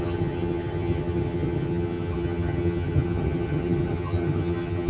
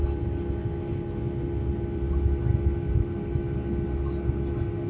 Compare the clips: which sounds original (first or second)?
second